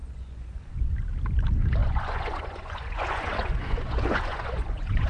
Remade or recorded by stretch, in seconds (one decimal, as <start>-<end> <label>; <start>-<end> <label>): 0.0-0.9 remade; 0.9-1.8 recorded; 1.8-5.1 remade